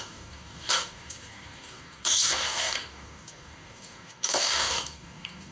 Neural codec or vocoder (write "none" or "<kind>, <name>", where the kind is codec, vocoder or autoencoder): codec, DAC